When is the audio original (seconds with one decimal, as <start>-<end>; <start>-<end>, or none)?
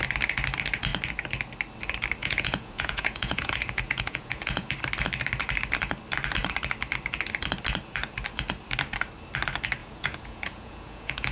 0.0-2.2; 4.7-9.8